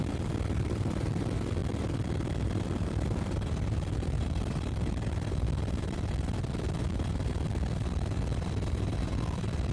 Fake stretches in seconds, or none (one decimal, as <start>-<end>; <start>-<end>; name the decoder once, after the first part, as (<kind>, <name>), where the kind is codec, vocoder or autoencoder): 0.0-9.7 (vocoder, BigVGAN v2)